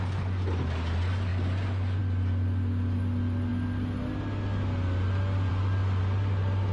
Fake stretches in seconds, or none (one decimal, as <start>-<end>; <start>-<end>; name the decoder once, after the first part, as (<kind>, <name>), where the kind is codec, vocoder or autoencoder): none